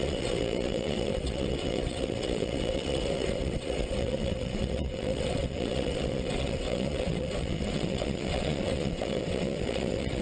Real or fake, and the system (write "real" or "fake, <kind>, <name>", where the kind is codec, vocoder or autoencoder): fake, vocoder, WaveNeXt